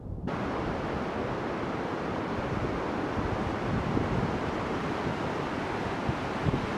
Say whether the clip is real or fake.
real